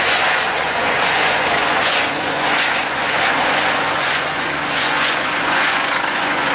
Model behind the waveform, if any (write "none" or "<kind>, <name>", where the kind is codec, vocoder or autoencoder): vocoder, Vocos